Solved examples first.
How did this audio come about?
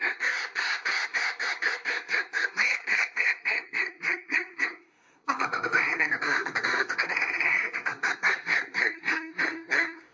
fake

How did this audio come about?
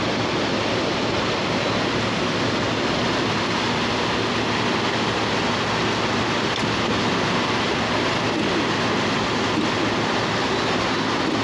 real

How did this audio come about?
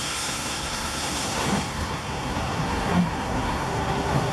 fake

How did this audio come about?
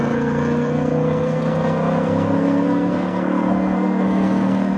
fake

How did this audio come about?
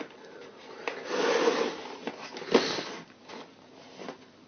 real